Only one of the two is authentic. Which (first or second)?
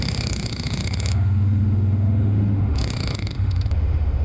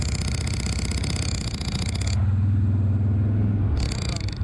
second